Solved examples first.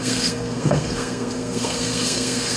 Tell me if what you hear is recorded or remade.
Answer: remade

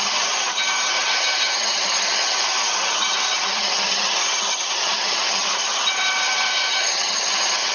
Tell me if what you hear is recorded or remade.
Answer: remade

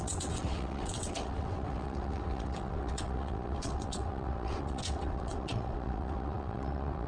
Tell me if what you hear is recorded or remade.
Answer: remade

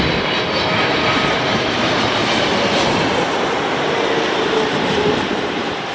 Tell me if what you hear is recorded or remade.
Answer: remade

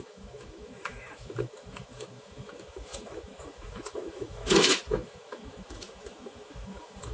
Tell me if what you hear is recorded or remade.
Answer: remade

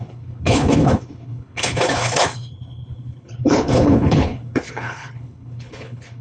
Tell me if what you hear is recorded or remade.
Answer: remade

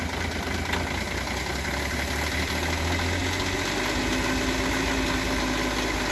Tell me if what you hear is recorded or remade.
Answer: recorded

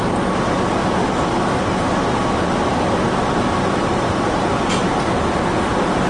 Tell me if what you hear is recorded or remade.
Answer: recorded